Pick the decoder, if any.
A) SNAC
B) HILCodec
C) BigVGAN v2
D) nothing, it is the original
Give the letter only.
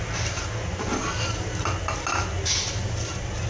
D